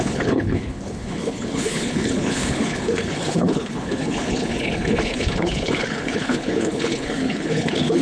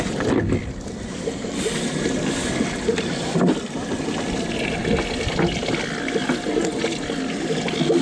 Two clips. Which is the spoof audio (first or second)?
first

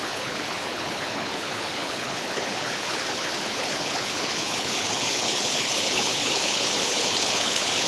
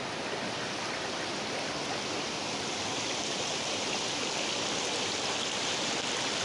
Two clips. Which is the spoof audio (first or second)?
first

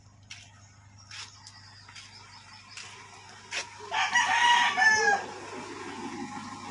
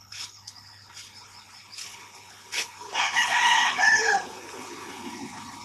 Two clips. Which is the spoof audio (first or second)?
second